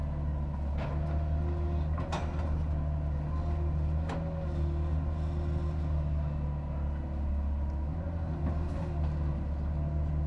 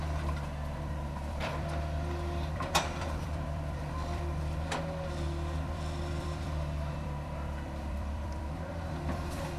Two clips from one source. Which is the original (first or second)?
first